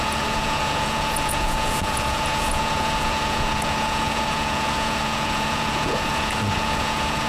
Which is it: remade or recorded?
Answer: remade